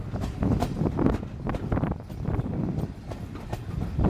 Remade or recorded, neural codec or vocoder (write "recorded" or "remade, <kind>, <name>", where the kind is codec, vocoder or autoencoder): recorded